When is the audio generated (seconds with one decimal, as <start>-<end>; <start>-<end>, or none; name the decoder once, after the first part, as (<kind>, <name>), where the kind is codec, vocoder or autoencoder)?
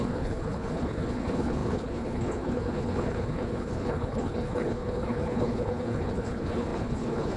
0.0-7.4 (codec, HILCodec)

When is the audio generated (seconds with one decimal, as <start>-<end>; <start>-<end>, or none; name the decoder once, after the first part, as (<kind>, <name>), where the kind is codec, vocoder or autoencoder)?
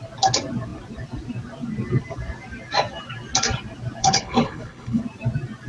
4.0-5.0 (codec, HILCodec)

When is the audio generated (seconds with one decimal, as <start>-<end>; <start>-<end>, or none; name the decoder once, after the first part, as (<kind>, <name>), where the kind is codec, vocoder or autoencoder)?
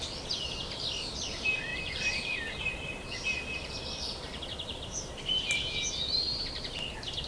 none